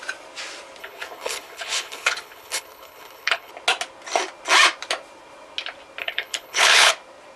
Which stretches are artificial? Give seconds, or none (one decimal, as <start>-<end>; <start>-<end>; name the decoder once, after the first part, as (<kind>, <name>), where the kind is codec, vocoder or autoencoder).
0.8-3.5 (codec, HILCodec); 6.0-6.9